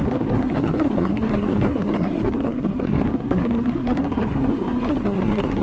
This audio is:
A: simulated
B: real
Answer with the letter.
A